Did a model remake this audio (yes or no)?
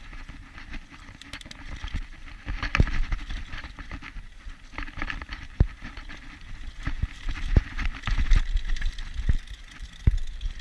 no